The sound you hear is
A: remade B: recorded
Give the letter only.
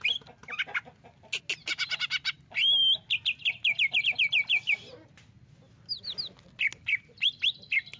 B